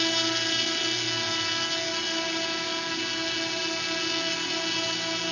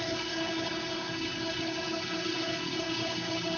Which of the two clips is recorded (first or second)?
first